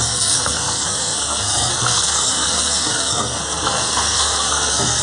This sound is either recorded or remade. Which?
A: remade